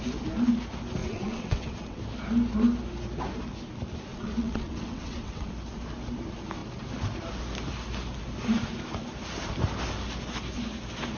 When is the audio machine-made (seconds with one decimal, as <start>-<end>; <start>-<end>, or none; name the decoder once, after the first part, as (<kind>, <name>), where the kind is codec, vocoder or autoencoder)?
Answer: 1.0-2.0 (vocoder, WaveNeXt); 4.1-5.5